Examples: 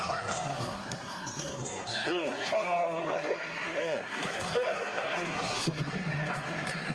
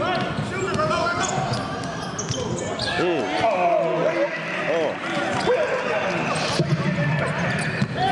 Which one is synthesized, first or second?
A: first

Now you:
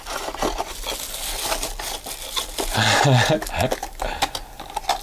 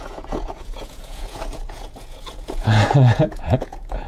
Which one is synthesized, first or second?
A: second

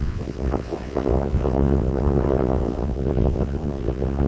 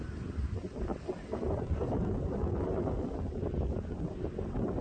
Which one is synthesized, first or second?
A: first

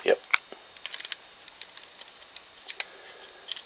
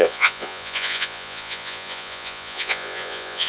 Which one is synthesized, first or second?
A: second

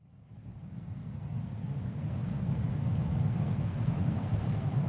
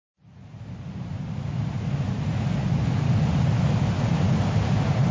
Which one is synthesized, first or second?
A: first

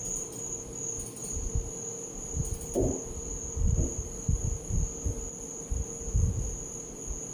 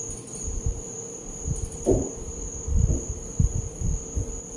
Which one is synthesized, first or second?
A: second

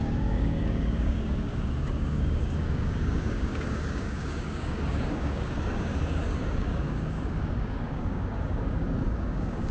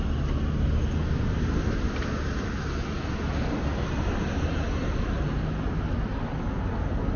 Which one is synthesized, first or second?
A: first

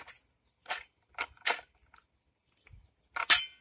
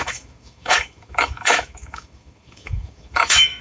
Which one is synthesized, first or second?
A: second